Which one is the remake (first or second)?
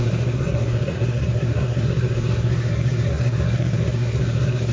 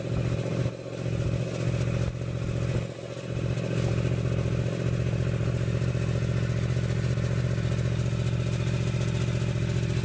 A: first